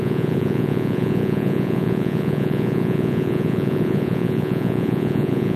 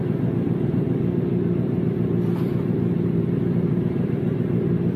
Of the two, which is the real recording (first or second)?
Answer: second